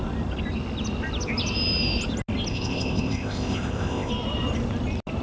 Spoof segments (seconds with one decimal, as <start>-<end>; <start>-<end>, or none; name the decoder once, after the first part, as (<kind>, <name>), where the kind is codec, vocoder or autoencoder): 2.5-4.1 (codec, ZipCodec)